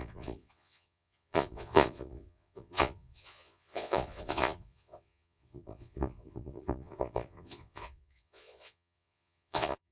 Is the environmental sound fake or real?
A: fake